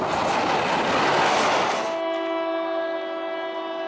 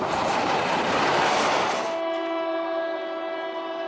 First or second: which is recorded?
first